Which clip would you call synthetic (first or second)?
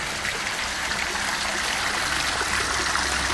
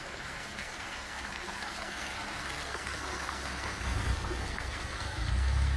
second